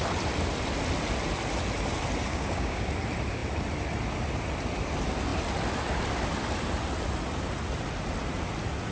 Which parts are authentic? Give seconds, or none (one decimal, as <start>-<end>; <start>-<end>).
0.0-2.3; 2.9-8.9